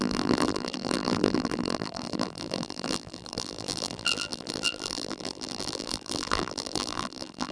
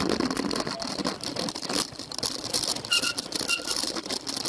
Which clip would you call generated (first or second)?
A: first